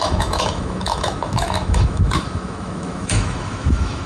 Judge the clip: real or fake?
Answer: fake